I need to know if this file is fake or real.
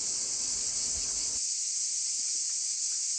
real